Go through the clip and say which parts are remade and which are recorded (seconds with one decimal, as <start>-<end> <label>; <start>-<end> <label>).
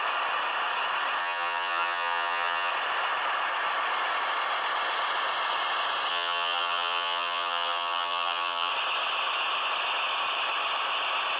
0.0-1.2 recorded; 1.2-2.7 remade; 2.7-6.1 recorded; 6.1-8.7 remade; 8.7-11.4 recorded